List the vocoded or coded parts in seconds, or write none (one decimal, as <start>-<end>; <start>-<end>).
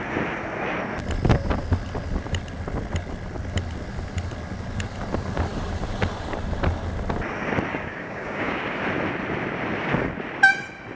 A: 7.7-8.8